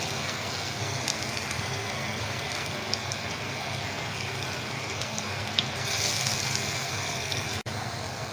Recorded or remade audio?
remade